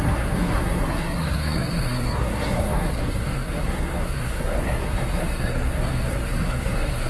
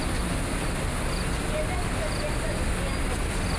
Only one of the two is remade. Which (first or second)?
first